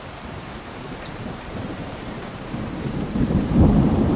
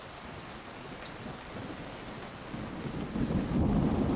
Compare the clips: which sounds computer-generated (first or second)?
first